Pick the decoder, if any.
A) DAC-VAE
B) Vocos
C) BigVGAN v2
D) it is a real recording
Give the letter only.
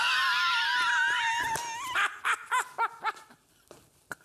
D